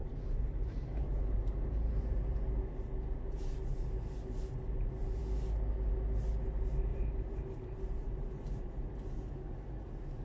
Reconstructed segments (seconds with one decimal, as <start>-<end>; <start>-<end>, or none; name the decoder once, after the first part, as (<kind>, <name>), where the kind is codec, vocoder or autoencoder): 0.0-2.6 (vocoder, BigVGAN v2); 6.9-8.8